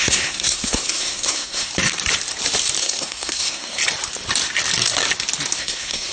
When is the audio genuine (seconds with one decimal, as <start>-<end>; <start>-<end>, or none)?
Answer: 1.7-2.8; 3.8-5.6

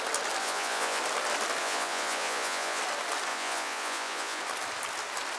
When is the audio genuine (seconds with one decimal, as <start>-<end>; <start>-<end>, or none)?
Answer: 0.0-0.4; 1.0-1.6; 2.8-3.3; 4.4-5.4

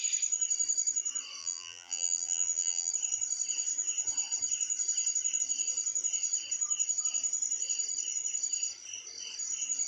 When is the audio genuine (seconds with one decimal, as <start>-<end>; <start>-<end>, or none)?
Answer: 0.0-1.4; 2.9-9.9

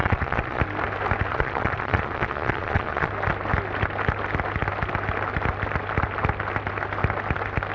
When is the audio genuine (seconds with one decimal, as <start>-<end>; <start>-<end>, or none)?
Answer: 0.6-1.3; 3.1-7.7

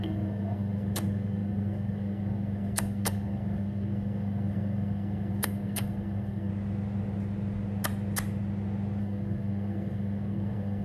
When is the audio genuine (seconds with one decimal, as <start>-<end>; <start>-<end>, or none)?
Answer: 6.5-9.0